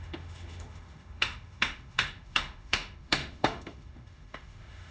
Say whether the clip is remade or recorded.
remade